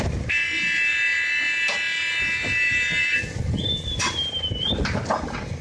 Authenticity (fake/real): real